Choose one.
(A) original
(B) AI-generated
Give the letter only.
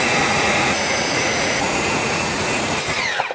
B